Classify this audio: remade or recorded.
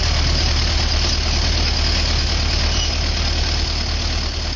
recorded